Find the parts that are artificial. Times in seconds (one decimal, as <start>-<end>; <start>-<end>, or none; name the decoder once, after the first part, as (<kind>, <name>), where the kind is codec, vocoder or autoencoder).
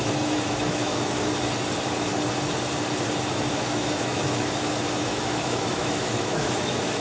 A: 0.0-1.3 (autoencoder, DAC-VAE); 3.2-7.0